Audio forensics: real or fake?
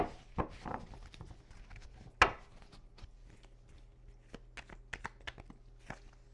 real